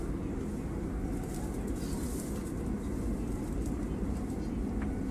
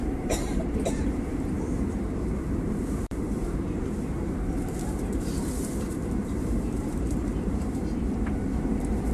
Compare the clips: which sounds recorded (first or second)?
first